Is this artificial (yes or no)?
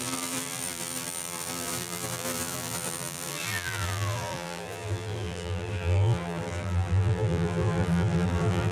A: yes